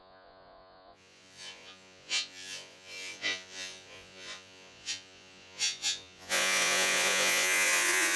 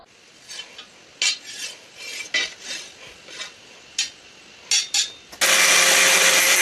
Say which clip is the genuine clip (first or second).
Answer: second